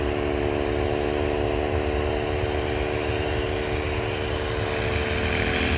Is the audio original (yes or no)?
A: yes